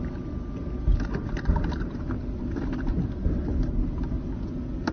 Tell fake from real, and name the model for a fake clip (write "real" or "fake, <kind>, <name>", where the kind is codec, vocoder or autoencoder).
real